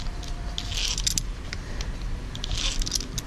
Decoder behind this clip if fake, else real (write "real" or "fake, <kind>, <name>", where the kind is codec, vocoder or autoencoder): real